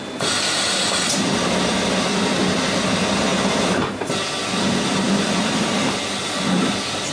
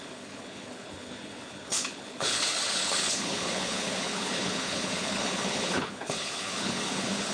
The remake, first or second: second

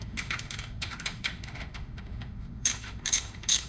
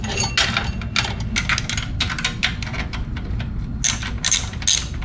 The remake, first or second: first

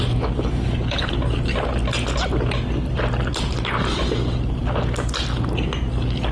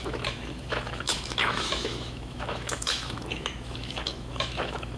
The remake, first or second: second